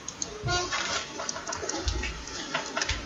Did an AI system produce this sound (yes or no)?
no